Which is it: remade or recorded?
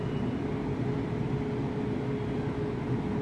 recorded